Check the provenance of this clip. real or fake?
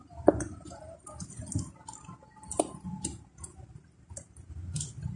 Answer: real